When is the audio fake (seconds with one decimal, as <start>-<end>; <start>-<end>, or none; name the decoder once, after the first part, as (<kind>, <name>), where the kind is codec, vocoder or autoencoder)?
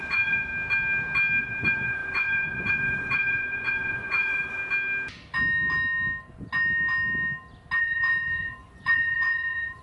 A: 0.0-0.5 (vocoder, Vocos); 1.4-4.6; 7.8-9.8